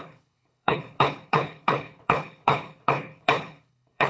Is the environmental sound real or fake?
fake